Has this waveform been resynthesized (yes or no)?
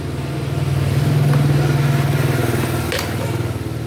no